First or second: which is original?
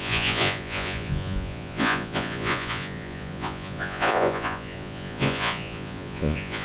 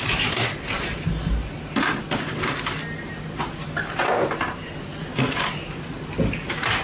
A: second